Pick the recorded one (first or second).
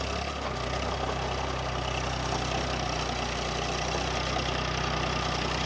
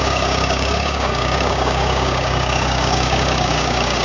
first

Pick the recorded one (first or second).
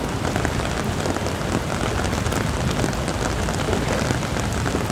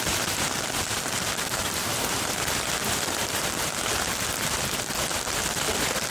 first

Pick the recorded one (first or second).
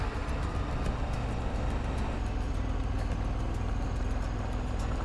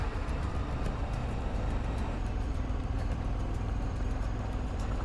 first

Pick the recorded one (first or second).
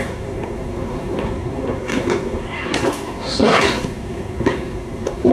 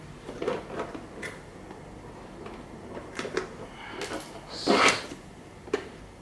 second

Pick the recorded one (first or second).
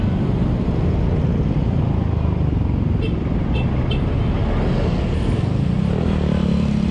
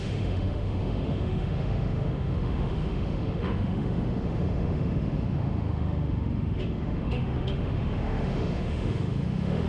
first